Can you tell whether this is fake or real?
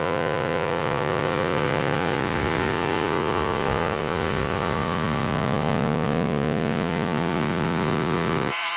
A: fake